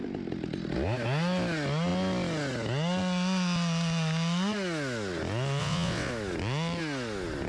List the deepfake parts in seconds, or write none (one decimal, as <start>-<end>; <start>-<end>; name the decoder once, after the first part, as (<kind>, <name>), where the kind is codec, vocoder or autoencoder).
5.6-6.1 (vocoder, WaveNeXt)

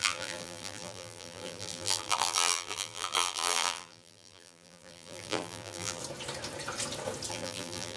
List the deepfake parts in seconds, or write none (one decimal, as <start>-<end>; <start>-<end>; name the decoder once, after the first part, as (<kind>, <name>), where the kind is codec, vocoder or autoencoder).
0.0-6.0 (vocoder, BigVGAN v2); 7.3-8.0

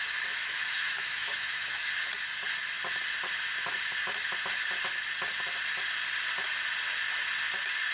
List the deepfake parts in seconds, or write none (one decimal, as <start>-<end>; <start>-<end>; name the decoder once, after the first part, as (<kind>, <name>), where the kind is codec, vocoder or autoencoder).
0.4-1.9 (autoencoder, DAC-VAE)

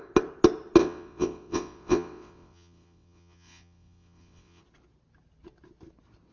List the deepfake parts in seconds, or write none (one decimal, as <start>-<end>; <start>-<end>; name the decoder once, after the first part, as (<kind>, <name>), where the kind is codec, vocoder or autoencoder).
0.8-4.6 (vocoder, WaveNeXt)

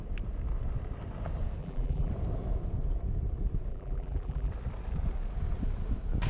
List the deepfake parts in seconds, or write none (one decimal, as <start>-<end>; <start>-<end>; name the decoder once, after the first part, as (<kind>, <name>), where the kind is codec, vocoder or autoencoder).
1.6-2.1 (vocoder, BigVGAN v2); 3.7-4.5

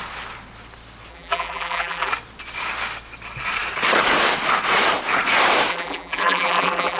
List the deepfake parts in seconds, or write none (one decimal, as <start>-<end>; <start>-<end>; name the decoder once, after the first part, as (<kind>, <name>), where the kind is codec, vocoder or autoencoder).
1.1-2.1 (vocoder, BigVGAN v2); 5.7-7.0